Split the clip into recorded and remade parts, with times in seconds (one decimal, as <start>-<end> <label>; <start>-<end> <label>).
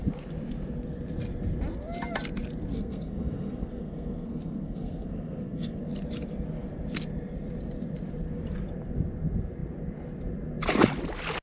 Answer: 0.0-2.7 recorded; 2.7-5.9 remade; 5.9-11.4 recorded